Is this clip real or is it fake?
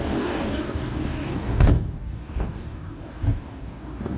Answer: fake